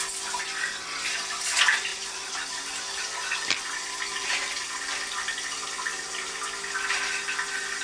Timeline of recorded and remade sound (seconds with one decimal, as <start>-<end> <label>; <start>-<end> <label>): 0.0-7.8 recorded